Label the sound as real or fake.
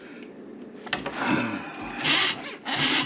real